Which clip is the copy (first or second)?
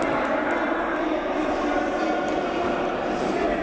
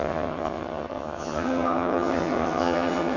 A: second